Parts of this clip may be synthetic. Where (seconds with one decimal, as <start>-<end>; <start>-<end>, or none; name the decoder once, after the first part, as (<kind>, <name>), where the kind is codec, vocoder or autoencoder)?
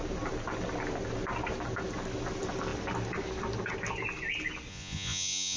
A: 4.7-5.6 (vocoder, Vocos)